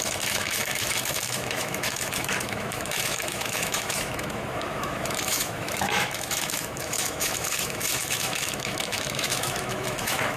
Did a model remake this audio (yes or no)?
yes